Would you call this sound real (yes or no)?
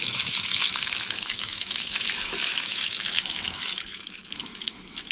no